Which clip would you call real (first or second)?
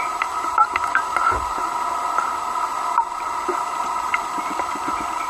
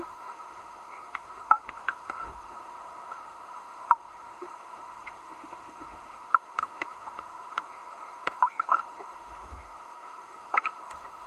first